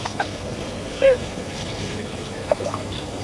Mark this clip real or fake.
fake